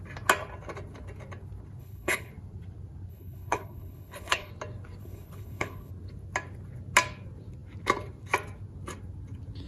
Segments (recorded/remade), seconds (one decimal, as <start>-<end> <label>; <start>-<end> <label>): 0.0-1.8 recorded; 1.8-2.3 remade; 2.3-3.1 recorded; 3.1-4.5 remade; 4.5-5.0 recorded; 5.0-5.9 remade; 5.9-9.7 recorded